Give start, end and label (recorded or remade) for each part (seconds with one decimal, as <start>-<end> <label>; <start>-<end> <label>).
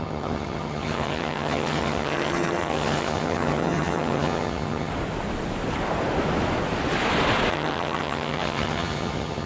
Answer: 0.0-4.9 remade; 4.9-7.5 recorded; 7.5-9.5 remade